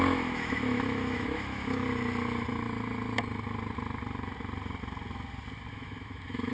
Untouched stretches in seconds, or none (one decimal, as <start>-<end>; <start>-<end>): 1.8-5.7